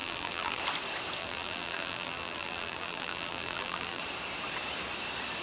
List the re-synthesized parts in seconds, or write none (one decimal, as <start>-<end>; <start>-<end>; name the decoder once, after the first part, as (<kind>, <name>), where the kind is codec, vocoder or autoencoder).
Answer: 0.0-0.6 (vocoder, BigVGAN v2); 1.2-4.0